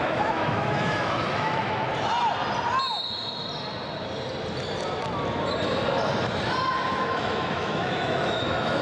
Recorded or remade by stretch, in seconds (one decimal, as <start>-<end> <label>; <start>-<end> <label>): 0.0-1.9 remade; 1.9-6.9 recorded; 6.9-8.8 remade